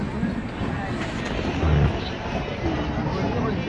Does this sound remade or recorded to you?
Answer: recorded